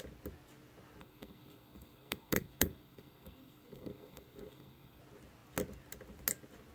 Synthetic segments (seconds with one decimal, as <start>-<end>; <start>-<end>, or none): 1.0-5.0

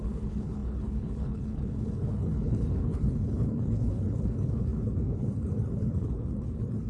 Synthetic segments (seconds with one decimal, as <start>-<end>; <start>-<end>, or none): 0.0-6.9

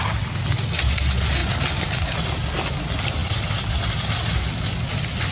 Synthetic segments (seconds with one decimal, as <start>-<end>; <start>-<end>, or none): 1.4-2.6

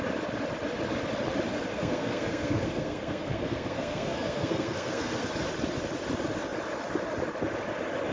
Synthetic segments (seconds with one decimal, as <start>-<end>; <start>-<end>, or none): 1.7-5.3

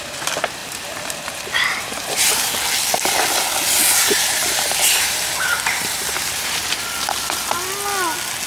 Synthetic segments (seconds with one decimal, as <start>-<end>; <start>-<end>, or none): 0.6-2.5; 3.8-6.6